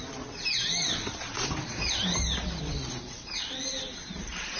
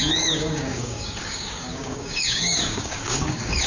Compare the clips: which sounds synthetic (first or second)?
second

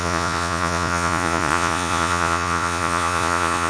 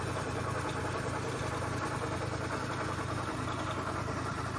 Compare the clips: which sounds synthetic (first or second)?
first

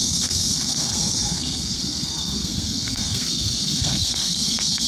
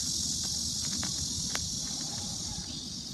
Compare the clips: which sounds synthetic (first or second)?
first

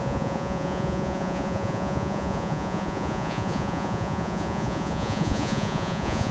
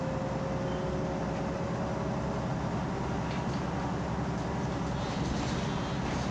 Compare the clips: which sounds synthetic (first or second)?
first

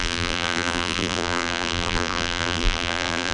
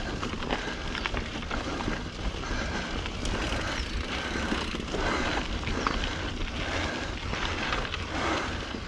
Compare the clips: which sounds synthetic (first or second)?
first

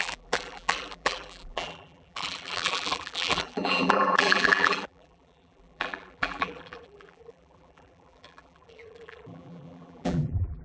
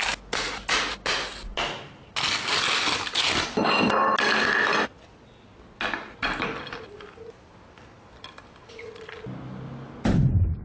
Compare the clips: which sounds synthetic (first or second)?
first